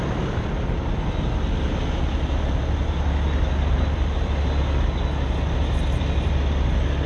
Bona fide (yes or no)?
yes